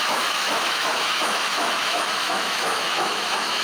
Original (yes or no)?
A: no